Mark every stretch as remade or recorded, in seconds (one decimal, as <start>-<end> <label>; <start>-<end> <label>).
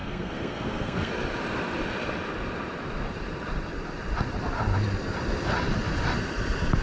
0.0-1.1 remade; 1.1-6.8 recorded